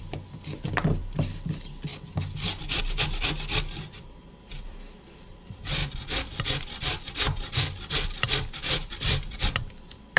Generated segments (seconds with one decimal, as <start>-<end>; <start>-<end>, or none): 0.0-1.9; 2.6-5.8; 7.1-10.2